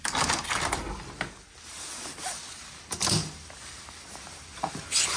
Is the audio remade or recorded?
recorded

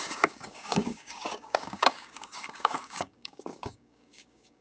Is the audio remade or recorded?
remade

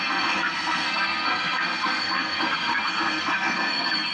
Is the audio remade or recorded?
remade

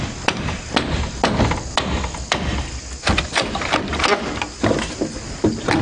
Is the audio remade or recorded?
recorded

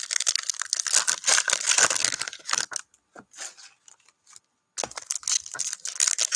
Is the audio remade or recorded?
recorded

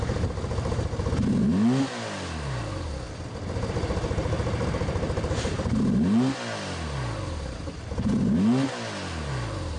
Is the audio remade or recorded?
recorded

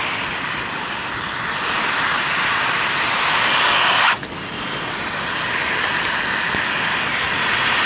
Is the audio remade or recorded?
recorded